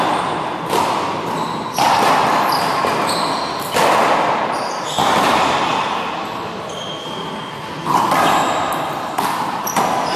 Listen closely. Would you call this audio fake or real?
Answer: real